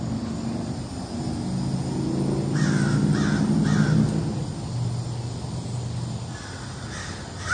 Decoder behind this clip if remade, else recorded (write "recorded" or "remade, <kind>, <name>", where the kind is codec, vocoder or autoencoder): recorded